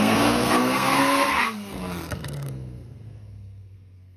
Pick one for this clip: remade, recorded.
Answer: remade